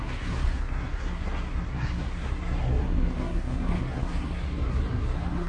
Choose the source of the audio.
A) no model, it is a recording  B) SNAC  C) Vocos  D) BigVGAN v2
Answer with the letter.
B